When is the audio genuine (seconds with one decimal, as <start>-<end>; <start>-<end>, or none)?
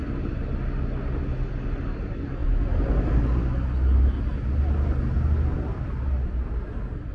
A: 0.0-2.4; 3.1-7.1